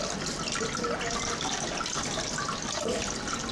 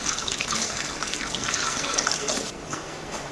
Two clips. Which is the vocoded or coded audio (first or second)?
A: second